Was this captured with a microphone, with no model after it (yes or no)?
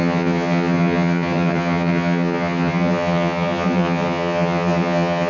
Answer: no